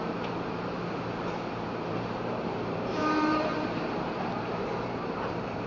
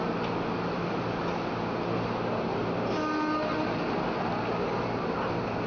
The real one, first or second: second